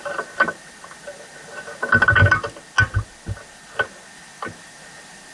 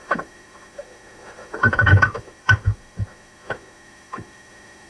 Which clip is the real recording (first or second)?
first